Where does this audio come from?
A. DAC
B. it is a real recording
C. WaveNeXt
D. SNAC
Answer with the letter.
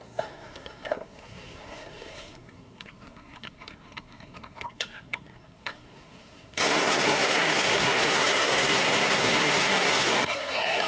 D